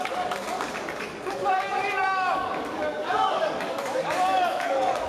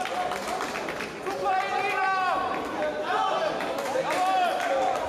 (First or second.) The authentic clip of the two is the second